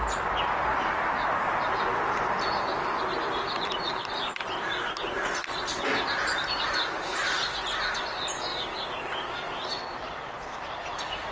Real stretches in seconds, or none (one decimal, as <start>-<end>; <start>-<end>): 0.0-11.3